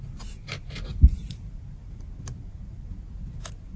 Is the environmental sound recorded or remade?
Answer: recorded